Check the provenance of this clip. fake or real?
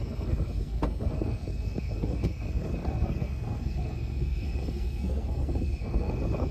fake